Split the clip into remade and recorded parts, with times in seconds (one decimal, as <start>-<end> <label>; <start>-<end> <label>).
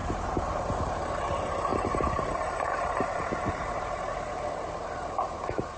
0.0-0.8 remade; 0.8-1.7 recorded; 1.7-4.1 remade; 4.1-5.8 recorded